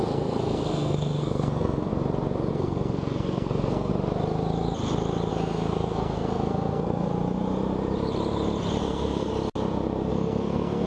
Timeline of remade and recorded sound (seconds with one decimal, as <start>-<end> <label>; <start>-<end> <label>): 0.0-1.9 remade; 1.9-2.5 recorded; 2.5-3.9 remade; 3.9-5.3 recorded; 5.3-7.1 remade; 7.1-8.8 recorded; 8.8-9.3 remade; 9.3-10.1 recorded; 10.1-10.9 remade

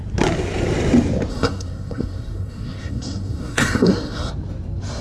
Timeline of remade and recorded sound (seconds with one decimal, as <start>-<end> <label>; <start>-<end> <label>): 0.0-1.3 recorded; 1.3-4.3 remade; 4.3-5.0 recorded

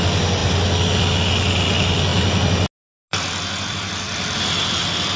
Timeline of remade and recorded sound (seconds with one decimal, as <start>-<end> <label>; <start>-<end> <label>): 0.0-5.2 recorded

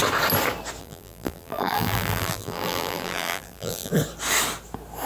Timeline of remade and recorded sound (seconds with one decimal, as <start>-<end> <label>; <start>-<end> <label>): 0.0-0.8 recorded; 0.8-3.9 remade; 3.9-5.1 recorded

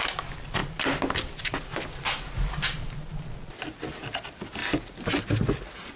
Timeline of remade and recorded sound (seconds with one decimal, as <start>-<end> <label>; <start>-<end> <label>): 0.0-6.0 recorded